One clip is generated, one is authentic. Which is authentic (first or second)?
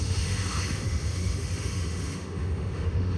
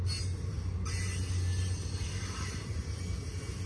second